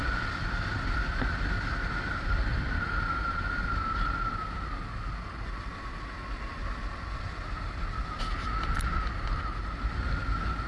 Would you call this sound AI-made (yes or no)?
no